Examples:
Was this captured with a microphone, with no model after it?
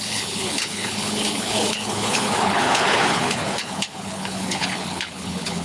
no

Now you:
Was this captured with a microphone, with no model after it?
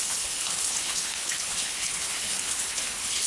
no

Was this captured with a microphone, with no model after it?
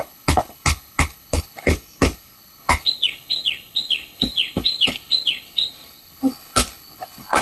no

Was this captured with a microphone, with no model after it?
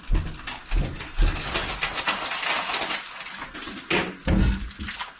yes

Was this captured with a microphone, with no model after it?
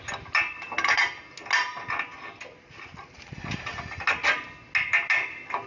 yes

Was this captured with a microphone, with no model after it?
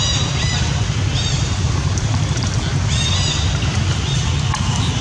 yes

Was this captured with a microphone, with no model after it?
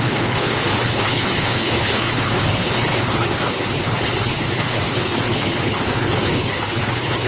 no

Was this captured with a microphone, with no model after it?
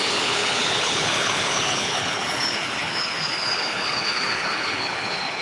no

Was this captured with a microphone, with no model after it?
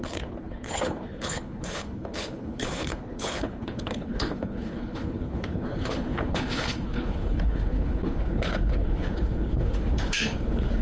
no